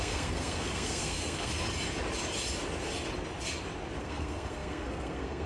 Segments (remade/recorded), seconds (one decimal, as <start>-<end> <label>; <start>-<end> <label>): 0.0-1.5 remade; 1.5-4.0 recorded; 4.0-5.5 remade